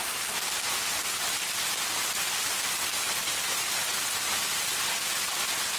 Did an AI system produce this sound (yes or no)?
no